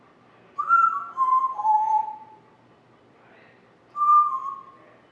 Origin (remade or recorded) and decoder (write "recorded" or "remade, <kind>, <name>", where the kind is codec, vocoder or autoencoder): recorded